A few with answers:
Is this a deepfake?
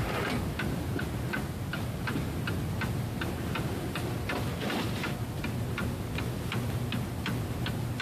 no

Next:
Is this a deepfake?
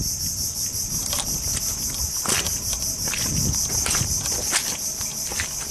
no